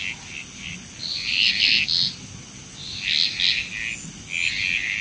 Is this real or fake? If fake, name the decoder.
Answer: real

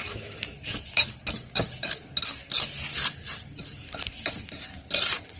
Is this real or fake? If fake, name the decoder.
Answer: real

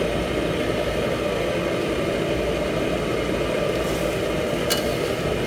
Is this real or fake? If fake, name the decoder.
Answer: real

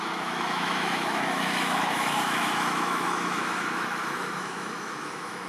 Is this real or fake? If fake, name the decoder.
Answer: fake, autoencoder, DAC-VAE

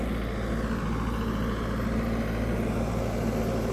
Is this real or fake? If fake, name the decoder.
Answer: real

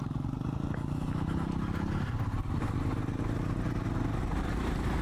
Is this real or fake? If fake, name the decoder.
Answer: real